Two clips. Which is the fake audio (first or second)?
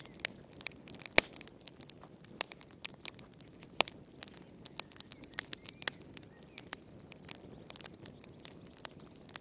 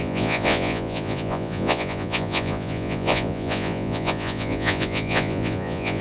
second